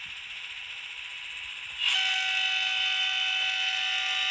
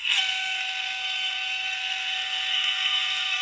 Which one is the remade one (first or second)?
second